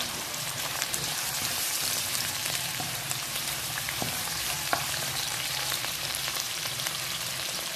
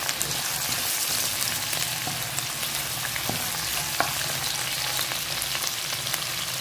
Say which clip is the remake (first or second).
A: first